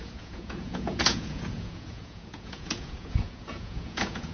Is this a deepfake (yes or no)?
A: yes